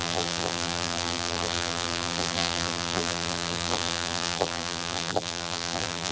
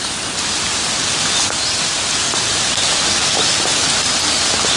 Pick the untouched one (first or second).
second